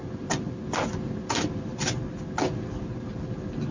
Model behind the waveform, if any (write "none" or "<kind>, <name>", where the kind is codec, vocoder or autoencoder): none